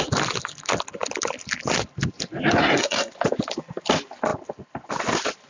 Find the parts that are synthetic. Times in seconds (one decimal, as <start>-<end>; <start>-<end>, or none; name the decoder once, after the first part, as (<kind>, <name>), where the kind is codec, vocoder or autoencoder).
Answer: 2.6-3.1 (codec, SNAC)